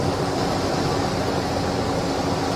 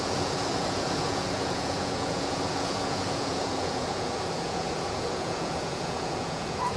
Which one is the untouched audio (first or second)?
first